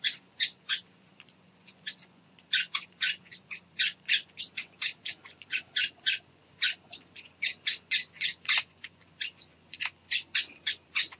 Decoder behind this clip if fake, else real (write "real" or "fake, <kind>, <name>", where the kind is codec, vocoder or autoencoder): fake, vocoder, Vocos